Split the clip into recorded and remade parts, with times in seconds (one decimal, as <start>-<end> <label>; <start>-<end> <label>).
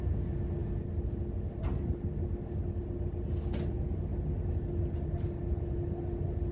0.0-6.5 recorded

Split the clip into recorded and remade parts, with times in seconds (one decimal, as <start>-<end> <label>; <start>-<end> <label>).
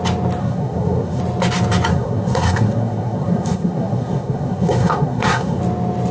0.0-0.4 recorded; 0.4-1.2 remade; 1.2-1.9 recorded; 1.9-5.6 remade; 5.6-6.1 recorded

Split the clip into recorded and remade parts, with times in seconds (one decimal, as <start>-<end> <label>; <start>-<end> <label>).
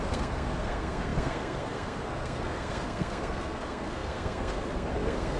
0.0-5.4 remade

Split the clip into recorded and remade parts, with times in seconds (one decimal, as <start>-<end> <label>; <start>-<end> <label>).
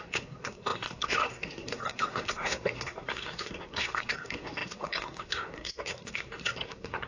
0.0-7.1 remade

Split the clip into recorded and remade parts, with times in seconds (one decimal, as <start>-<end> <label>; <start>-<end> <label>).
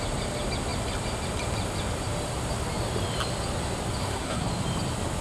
0.0-4.0 recorded; 4.0-4.5 remade; 4.5-5.2 recorded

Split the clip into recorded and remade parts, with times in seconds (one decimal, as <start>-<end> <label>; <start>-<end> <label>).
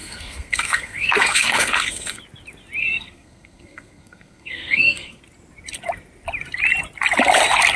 0.0-2.2 remade; 2.2-2.8 recorded; 2.8-5.2 remade; 5.2-7.8 recorded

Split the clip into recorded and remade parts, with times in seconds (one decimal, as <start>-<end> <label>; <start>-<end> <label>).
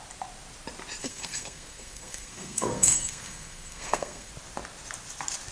0.0-1.0 recorded; 1.0-4.3 remade; 4.3-5.5 recorded